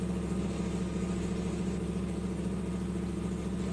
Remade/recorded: recorded